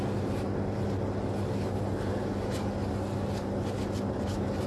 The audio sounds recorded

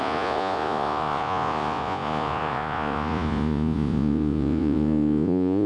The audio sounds remade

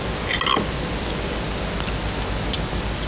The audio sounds recorded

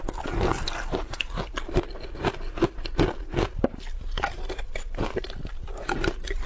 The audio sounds recorded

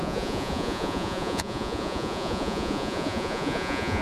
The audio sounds remade